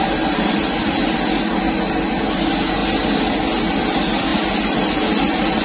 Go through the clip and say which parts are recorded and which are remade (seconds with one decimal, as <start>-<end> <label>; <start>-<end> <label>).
0.0-5.6 recorded